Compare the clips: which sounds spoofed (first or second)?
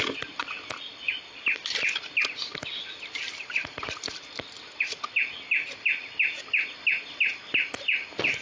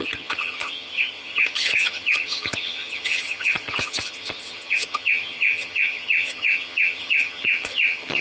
second